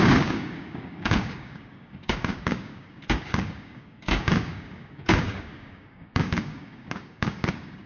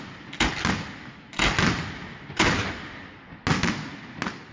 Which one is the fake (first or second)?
first